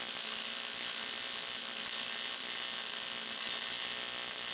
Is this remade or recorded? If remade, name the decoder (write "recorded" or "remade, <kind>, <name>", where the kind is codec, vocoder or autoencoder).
recorded